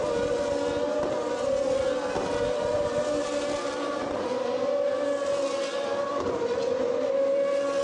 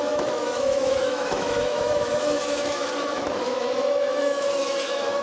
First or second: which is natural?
first